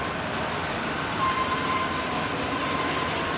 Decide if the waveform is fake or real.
real